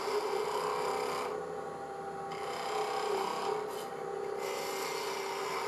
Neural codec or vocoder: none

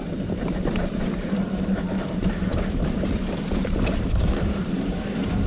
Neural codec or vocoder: vocoder, BigVGAN v2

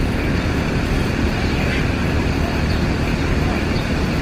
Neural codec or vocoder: vocoder, BigVGAN v2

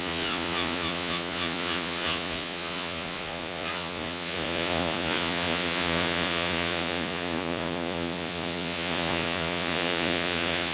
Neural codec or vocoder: vocoder, Vocos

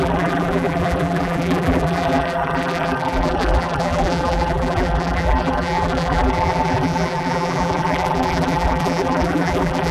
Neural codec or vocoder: vocoder, BigVGAN v2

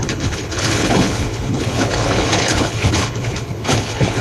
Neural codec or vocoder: codec, HILCodec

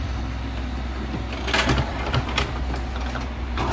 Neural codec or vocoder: none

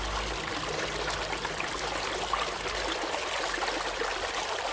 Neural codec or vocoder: none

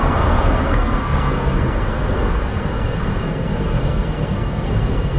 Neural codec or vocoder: codec, SNAC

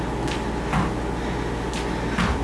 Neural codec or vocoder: none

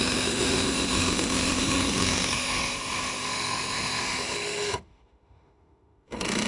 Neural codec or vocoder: autoencoder, DAC-VAE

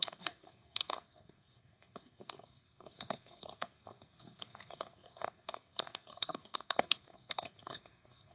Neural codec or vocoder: codec, SNAC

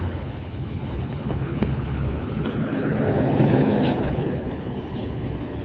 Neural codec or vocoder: codec, HILCodec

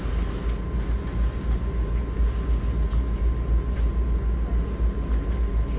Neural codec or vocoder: none